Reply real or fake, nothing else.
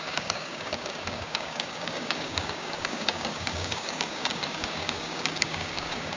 fake